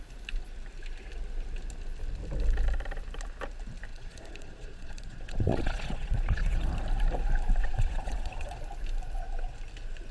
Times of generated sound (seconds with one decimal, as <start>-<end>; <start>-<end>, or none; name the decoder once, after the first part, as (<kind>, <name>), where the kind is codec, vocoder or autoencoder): 3.9-6.7 (vocoder, Vocos); 7.6-8.6